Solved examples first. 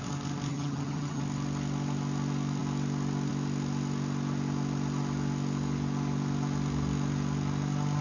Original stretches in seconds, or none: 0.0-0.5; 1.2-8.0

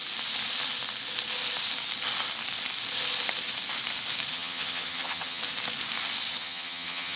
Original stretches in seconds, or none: 0.0-4.3; 5.4-6.3

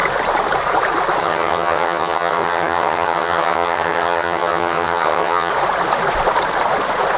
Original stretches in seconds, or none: 0.0-1.2; 5.5-7.2

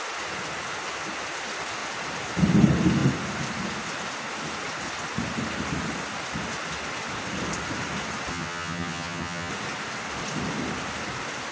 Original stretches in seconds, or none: 0.0-8.3; 9.5-11.5